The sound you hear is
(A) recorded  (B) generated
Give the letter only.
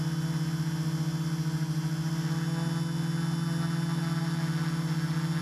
A